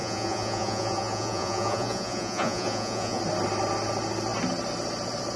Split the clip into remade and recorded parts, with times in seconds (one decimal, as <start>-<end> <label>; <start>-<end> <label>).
0.0-3.2 remade; 3.2-5.4 recorded